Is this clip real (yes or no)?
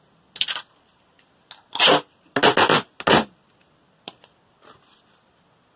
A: yes